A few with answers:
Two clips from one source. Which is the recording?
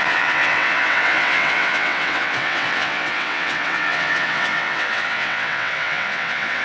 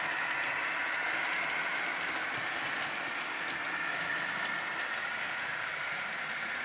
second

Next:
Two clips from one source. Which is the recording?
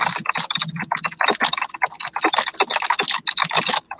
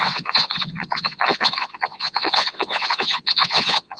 first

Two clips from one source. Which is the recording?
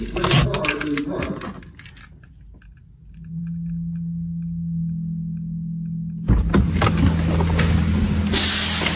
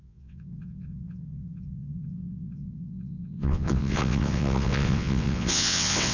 first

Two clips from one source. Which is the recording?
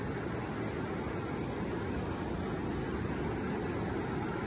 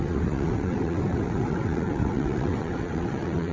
first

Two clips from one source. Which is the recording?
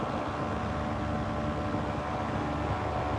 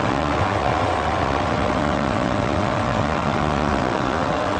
first